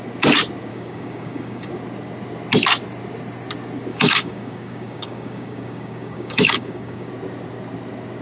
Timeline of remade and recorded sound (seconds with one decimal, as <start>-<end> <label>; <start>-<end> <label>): 0.0-0.7 recorded; 0.7-1.7 remade; 1.7-3.9 recorded; 3.9-7.1 remade; 7.1-8.2 recorded